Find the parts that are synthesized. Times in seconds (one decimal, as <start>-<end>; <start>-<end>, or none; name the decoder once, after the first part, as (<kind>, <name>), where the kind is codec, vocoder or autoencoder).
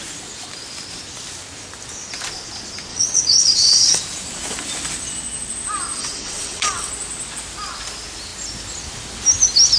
2.9-4.0 (vocoder, WaveNeXt); 6.0-6.9